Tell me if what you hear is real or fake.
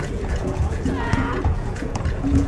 fake